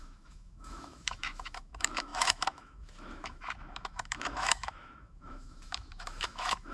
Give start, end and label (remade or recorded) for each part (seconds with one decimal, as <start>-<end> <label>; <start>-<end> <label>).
0.0-6.7 remade

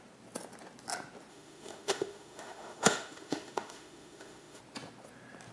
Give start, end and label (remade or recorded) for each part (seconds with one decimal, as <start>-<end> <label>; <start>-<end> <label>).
0.0-1.3 recorded; 1.3-4.6 remade; 4.6-5.5 recorded